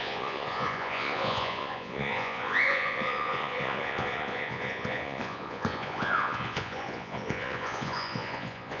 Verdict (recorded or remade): remade